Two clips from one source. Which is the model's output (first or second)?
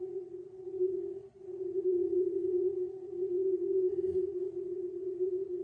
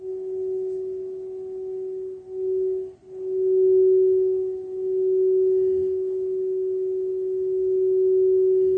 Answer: first